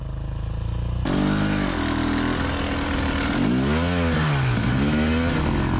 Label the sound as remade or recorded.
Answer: recorded